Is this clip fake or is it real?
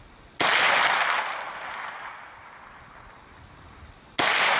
real